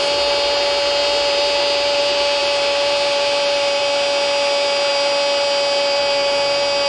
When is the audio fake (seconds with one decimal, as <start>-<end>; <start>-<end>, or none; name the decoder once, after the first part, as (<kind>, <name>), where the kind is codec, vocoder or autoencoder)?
none

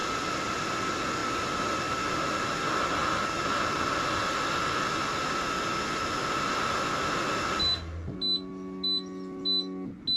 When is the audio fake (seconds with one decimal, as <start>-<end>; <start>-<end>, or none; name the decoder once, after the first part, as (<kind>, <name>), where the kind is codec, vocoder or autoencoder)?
none

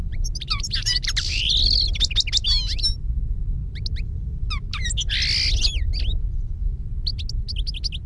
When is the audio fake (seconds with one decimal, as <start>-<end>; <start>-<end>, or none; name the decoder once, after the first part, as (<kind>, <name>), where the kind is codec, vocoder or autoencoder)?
0.0-1.5 (vocoder, BigVGAN v2)

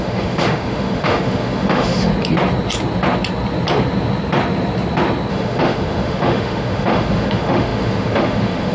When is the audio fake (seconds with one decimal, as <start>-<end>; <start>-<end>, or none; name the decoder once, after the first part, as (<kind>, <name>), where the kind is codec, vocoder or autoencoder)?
0.0-2.1 (autoencoder, DAC-VAE); 5.3-8.7

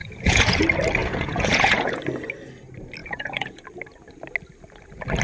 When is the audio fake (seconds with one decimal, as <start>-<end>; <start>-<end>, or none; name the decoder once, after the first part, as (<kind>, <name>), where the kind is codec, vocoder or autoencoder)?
0.0-0.6 (vocoder, Vocos); 1.0-2.0; 3.0-3.6

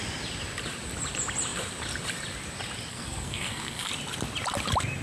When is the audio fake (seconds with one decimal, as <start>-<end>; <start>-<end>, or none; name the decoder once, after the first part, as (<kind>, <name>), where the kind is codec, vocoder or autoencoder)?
2.9-3.9 (codec, SNAC)

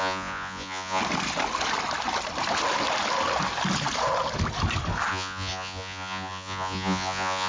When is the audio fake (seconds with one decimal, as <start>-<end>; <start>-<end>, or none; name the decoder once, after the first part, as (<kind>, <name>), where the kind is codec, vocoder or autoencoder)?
0.0-1.0 (vocoder, Vocos); 5.1-7.5

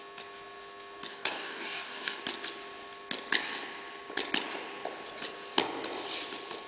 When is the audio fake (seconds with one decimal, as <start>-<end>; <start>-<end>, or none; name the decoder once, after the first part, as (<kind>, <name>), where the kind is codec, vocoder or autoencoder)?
1.1-2.2 (codec, DAC)